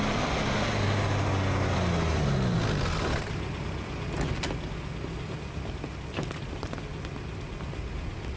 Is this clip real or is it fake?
real